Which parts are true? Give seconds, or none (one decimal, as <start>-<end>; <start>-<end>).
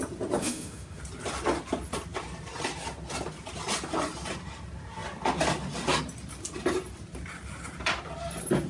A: 0.0-0.4; 1.0-8.7